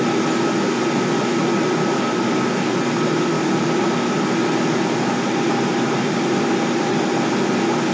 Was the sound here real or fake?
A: real